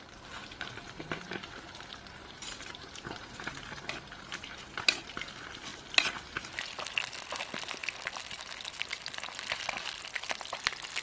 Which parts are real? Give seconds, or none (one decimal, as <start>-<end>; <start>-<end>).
0.0-2.2; 3.9-11.0